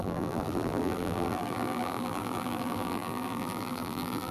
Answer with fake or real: fake